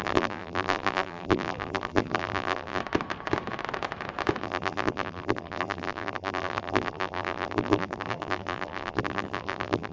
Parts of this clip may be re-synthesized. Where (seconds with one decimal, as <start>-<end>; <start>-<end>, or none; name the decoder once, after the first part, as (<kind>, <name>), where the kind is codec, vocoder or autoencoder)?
0.0-2.8 (vocoder, BigVGAN v2); 4.4-9.9